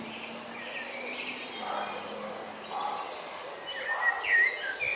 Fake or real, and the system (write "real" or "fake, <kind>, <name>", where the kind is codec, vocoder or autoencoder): real